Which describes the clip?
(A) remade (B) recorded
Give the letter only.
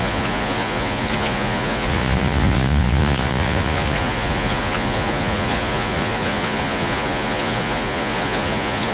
A